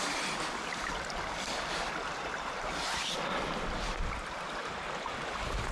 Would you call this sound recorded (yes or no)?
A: yes